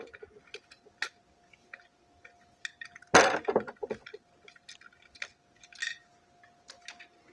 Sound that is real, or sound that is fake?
real